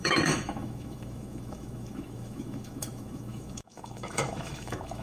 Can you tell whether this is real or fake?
fake